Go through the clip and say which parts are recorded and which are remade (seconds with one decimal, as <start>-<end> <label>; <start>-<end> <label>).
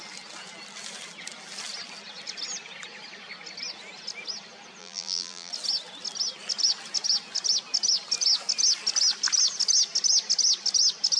0.0-4.8 recorded; 4.8-5.5 remade; 5.5-11.2 recorded